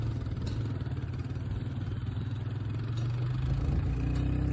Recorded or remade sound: recorded